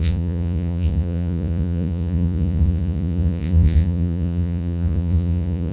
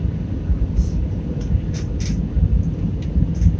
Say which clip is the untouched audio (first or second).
second